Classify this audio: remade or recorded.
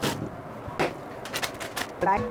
recorded